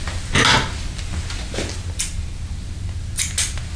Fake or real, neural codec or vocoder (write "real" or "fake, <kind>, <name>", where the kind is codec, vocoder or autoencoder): real